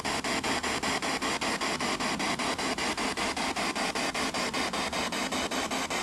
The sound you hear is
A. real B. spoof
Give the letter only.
A